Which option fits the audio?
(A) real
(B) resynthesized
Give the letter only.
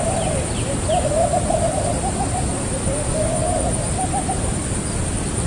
A